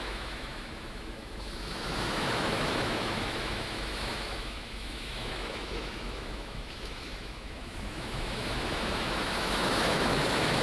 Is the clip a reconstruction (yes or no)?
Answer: yes